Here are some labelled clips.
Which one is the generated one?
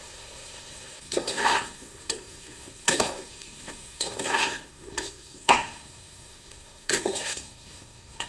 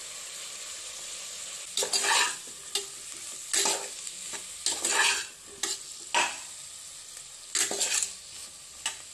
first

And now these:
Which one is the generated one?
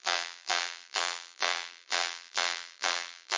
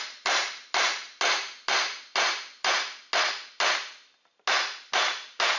first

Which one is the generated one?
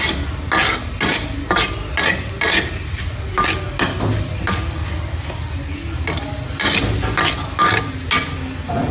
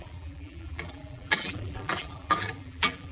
second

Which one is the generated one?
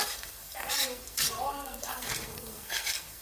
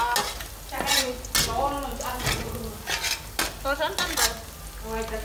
first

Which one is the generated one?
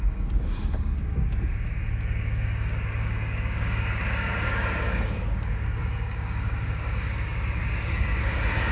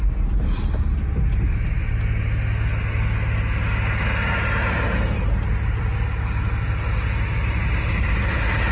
first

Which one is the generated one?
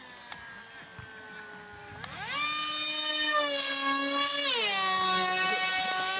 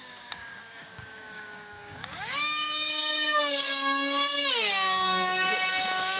second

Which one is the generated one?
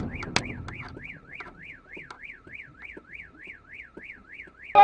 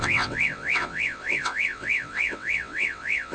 second